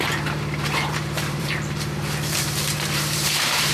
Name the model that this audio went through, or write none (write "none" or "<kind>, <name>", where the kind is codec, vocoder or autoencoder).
vocoder, BigVGAN v2